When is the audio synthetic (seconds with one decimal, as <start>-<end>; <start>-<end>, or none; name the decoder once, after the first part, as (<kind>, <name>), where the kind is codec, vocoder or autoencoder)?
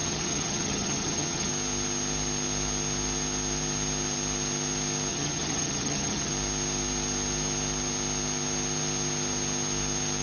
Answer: 0.0-1.5 (vocoder, HiFi-GAN); 5.1-6.3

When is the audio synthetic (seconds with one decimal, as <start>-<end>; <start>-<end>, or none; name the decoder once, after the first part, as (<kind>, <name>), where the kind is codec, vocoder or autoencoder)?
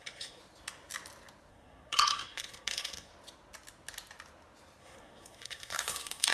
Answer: 0.0-0.4 (codec, SNAC); 1.5-3.1; 4.8-6.3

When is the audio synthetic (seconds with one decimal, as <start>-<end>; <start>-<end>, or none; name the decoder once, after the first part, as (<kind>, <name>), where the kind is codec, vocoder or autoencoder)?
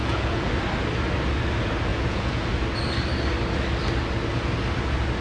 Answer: 0.0-0.5 (vocoder, Vocos); 1.9-2.5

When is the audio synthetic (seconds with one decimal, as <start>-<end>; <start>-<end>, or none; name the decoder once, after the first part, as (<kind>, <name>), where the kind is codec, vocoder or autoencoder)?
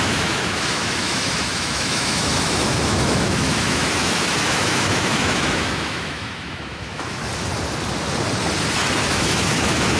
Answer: 0.0-7.2 (autoencoder, DAC-VAE); 9.1-10.0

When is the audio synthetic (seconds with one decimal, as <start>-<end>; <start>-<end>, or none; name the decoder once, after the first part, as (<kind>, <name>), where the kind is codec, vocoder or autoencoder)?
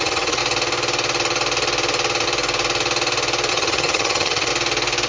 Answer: 0.0-0.4 (vocoder, HiFi-GAN); 3.5-4.5